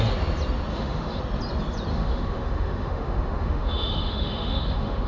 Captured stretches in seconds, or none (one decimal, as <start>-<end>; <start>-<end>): 0.0-0.7; 1.2-1.9